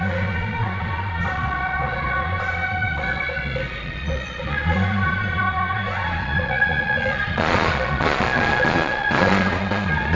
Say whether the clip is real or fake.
fake